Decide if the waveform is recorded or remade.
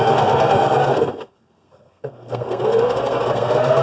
remade